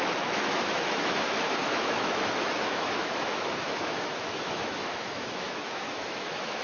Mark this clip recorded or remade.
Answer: remade